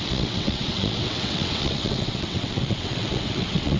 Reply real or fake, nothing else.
fake